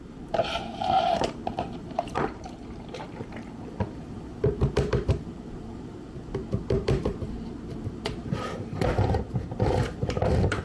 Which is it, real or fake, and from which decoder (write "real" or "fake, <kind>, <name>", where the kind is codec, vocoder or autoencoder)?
fake, vocoder, BigVGAN v2